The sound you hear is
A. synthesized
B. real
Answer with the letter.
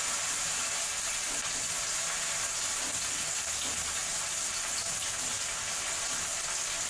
B